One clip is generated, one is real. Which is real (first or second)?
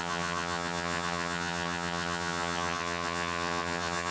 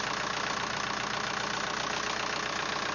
second